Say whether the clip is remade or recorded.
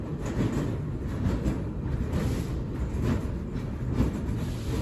recorded